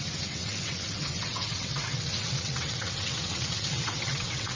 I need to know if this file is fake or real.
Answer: fake